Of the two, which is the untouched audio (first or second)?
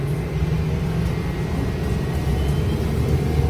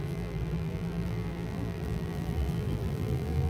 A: first